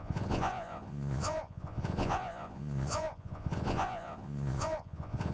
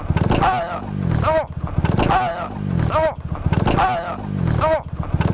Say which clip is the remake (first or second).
first